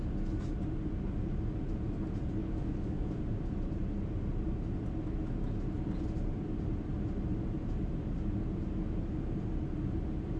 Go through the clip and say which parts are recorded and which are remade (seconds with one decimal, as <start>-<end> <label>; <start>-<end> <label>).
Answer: 0.0-2.4 recorded; 2.4-3.2 remade; 3.2-10.4 recorded

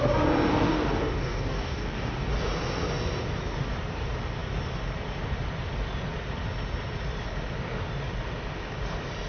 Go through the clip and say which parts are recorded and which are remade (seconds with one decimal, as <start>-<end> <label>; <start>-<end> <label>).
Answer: 0.0-0.5 recorded; 0.5-2.3 remade; 2.3-9.3 recorded

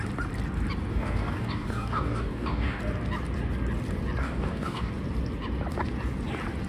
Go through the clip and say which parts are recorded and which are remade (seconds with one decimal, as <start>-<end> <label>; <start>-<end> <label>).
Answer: 0.0-0.9 recorded; 0.9-2.8 remade; 2.8-4.2 recorded; 4.2-4.9 remade; 4.9-6.7 recorded

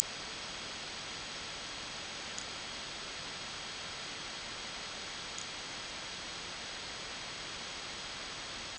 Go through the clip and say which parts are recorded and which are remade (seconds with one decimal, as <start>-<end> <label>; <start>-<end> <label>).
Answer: 0.0-8.8 recorded